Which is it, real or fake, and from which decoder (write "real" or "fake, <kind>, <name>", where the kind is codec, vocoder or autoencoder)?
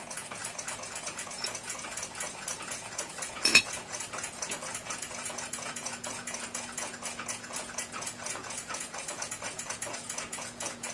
fake, vocoder, Vocos